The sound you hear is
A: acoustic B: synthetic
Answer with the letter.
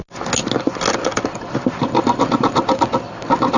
A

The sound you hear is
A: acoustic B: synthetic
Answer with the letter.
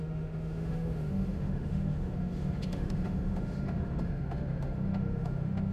B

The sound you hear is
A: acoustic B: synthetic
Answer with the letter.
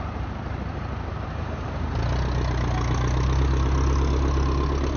A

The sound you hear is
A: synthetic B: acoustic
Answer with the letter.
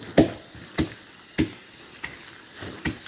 B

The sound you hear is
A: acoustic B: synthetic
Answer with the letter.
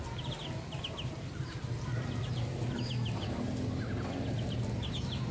A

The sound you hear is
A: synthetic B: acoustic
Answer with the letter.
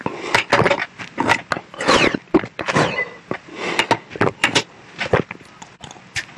B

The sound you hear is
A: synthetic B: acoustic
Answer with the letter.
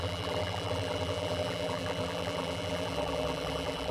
A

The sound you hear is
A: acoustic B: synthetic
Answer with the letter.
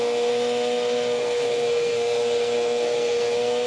B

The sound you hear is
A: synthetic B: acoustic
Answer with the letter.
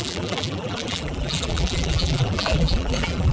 A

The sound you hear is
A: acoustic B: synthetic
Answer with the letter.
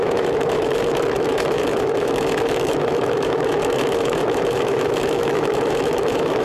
B